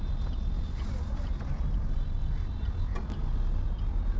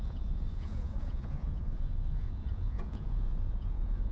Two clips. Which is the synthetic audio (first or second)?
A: second